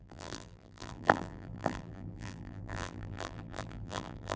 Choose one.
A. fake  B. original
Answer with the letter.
A